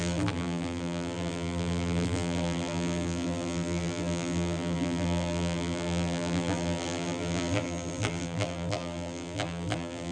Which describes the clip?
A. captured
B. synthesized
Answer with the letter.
B